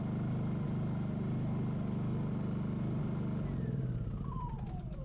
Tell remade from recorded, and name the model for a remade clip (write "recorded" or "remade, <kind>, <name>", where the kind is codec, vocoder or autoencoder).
recorded